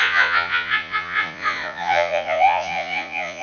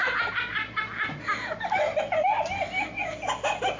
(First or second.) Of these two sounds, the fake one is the first